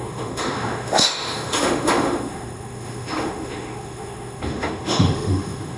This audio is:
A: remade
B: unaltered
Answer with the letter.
A